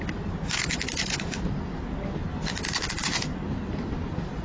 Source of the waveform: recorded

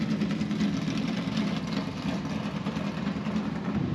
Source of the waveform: recorded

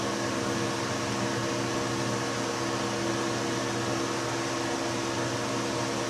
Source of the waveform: recorded